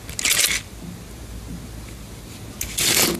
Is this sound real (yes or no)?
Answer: yes